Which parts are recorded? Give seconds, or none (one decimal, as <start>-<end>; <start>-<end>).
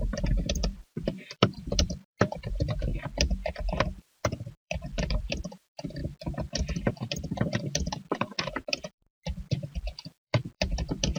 2.9-4.0; 6.0-6.9